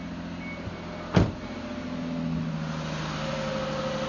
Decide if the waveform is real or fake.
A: real